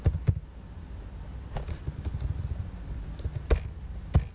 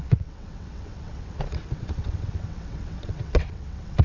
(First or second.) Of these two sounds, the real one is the first